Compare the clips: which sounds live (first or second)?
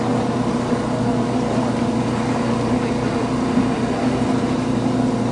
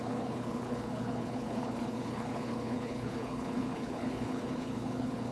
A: first